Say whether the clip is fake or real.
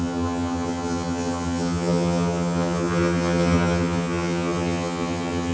fake